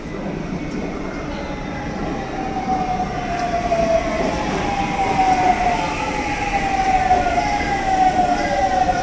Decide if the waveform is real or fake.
real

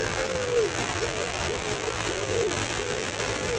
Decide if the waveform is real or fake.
fake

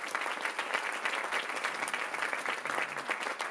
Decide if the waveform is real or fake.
real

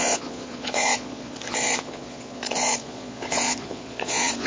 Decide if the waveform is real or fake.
fake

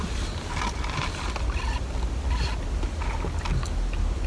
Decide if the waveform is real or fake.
real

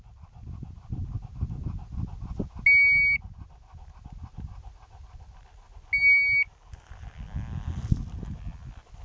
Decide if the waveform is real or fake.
real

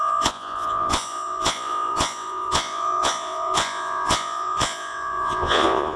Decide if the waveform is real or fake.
fake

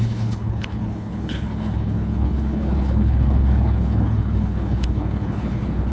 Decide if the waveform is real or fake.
fake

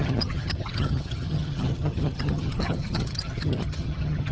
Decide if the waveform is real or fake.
fake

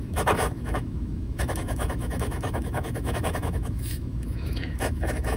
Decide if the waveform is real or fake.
fake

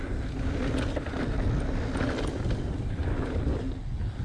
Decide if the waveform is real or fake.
real